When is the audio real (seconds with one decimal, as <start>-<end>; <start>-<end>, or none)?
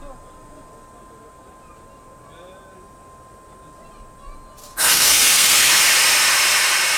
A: 0.0-4.6; 5.8-7.0